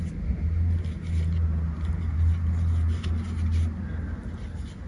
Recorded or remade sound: recorded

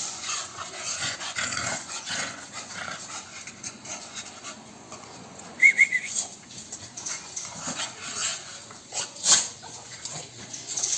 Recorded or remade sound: remade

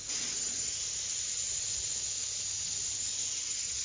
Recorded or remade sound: recorded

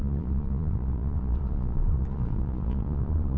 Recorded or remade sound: remade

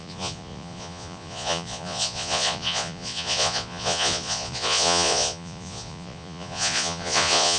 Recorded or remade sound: remade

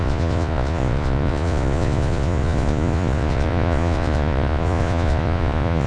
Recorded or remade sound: remade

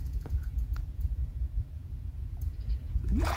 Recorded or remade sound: remade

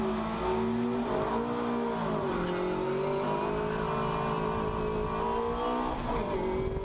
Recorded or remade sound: recorded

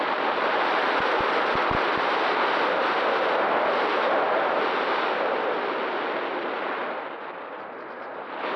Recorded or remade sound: recorded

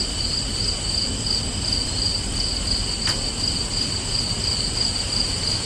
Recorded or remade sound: recorded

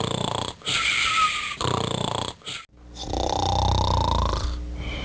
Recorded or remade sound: recorded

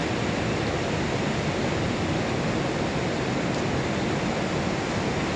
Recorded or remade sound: recorded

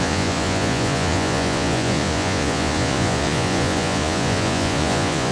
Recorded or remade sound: remade